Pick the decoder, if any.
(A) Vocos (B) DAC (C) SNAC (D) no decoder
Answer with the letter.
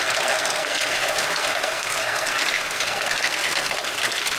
C